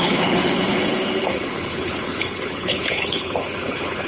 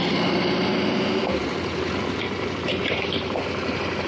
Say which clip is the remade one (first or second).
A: first